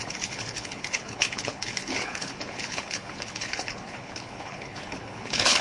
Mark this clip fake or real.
fake